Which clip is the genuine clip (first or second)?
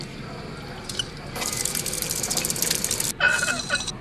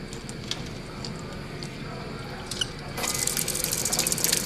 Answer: second